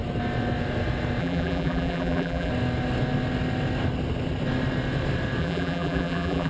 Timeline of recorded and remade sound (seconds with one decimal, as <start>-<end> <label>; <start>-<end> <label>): 0.0-1.2 recorded; 1.2-2.5 remade; 2.5-5.4 recorded; 5.4-6.5 remade